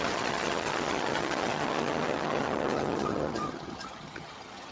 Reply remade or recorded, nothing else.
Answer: remade